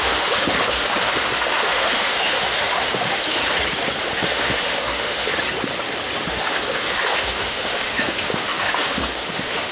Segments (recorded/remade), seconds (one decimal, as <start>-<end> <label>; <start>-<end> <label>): 0.0-3.4 remade; 3.4-4.0 recorded; 4.0-5.3 remade; 5.3-6.3 recorded; 6.3-9.7 remade